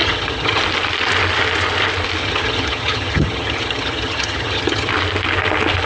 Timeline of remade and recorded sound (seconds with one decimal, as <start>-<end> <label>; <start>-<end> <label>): 0.0-0.6 remade; 0.6-2.2 recorded; 2.2-4.9 remade; 4.9-5.9 recorded